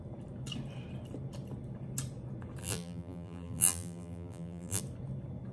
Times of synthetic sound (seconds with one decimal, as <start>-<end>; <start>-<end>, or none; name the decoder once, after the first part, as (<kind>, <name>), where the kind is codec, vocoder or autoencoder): 2.6-4.8 (vocoder, BigVGAN v2)